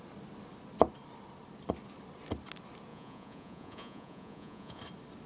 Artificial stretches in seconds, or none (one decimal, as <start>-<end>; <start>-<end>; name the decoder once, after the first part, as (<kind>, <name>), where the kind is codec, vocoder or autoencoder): 2.9-4.8 (vocoder, Vocos)